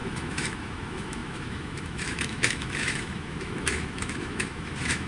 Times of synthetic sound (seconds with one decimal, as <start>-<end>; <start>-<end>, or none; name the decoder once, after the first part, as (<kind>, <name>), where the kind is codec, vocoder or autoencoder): 0.0-5.1 (autoencoder, DAC-VAE)

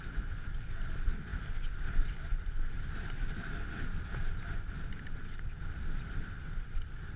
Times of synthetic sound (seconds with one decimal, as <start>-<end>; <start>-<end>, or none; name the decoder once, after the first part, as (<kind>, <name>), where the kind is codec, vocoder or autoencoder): none

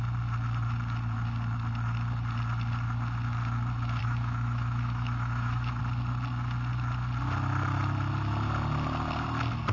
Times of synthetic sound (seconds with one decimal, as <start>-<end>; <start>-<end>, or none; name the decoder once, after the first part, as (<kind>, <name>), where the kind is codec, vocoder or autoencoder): 4.0-5.8 (autoencoder, DAC-VAE)

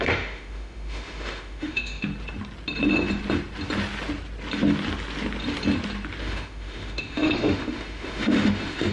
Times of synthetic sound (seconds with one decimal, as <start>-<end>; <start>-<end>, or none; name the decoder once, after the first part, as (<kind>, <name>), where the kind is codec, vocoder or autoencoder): 0.0-2.1 (autoencoder, DAC-VAE); 6.2-8.9

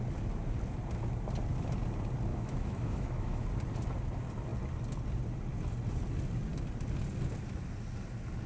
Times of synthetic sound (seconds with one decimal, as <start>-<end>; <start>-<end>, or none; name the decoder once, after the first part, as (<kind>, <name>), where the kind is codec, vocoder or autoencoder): 2.3-3.5 (autoencoder, DAC-VAE)

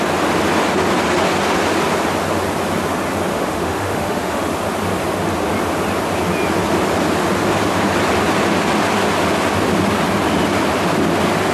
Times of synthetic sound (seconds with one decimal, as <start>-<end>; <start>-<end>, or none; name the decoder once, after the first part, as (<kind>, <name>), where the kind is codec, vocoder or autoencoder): 3.3-4.4 (autoencoder, DAC-VAE)

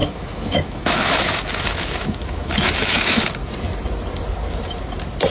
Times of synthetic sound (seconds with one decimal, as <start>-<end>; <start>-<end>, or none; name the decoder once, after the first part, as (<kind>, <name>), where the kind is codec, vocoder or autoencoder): 0.0-3.2 (autoencoder, DAC-VAE)